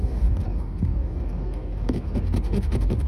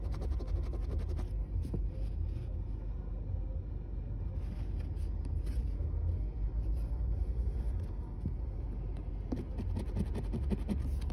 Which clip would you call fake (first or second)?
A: first